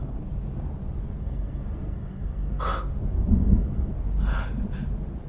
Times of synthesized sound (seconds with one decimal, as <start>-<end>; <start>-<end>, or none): 1.2-2.6; 3.3-3.9